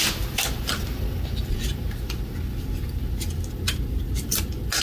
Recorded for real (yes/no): yes